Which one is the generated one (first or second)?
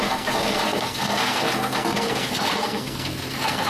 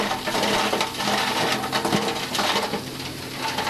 first